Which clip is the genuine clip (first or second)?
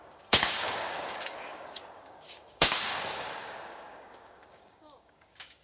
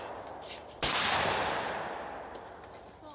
second